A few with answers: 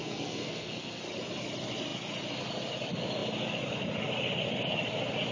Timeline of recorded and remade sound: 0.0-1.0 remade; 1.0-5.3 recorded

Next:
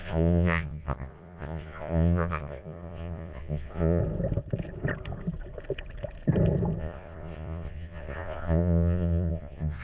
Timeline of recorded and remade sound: 0.0-4.0 remade; 4.0-6.8 recorded; 6.8-9.8 remade

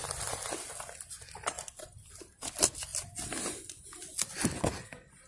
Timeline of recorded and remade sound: 0.0-5.3 recorded

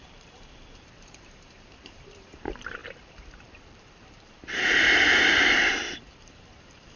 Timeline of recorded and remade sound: 0.0-7.0 remade

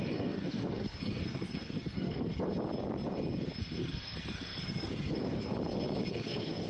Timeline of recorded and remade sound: 0.0-2.5 remade; 2.5-3.6 recorded; 3.6-5.5 remade; 5.5-6.1 recorded; 6.1-6.7 remade